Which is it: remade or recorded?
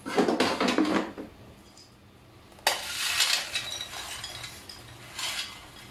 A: recorded